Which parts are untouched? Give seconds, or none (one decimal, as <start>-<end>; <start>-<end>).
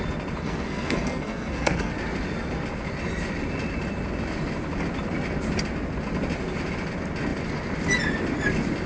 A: 0.0-0.4; 1.9-8.9